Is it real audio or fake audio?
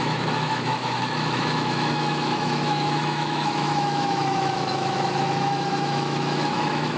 fake